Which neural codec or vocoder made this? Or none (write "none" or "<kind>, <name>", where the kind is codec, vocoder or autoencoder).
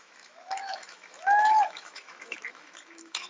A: autoencoder, DAC-VAE